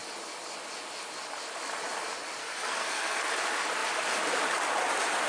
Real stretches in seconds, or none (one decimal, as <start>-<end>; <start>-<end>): 0.0-2.4; 3.2-5.3